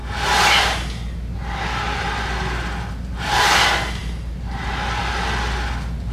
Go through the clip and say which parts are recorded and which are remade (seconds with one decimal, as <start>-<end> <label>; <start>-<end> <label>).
0.0-6.1 recorded